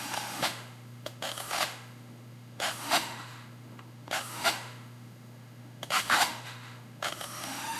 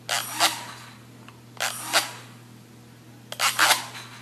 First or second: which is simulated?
first